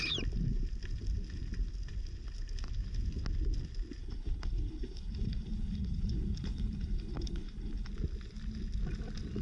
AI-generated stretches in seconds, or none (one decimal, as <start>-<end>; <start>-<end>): 4.0-7.9